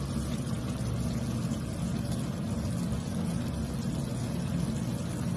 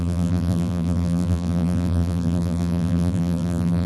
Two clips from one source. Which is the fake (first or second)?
second